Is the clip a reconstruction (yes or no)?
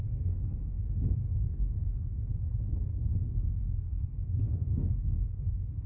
yes